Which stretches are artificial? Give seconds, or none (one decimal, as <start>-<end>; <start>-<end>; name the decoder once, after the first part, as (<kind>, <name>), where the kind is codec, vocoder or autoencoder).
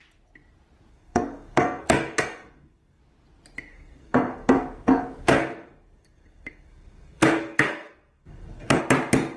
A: 0.9-3.0 (codec, SNAC); 3.7-8.8